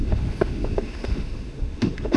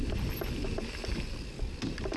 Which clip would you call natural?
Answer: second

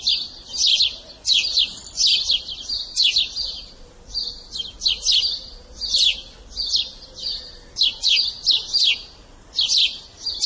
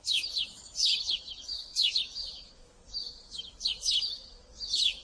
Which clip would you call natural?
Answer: first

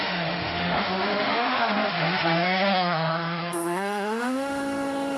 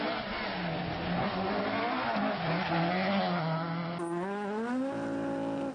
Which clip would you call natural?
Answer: second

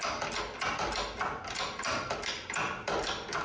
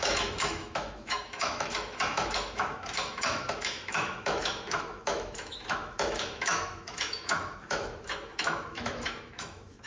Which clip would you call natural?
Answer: first